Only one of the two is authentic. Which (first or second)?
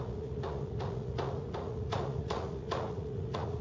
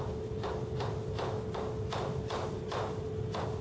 second